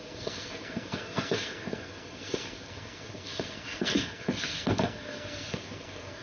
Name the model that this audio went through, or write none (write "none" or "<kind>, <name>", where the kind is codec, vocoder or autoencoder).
codec, SNAC